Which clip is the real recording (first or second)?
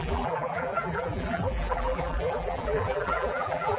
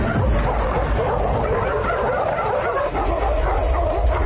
second